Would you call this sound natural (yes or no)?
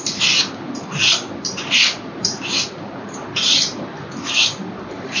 yes